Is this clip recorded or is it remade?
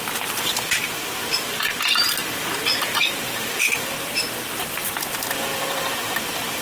remade